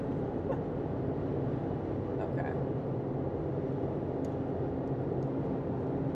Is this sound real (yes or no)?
yes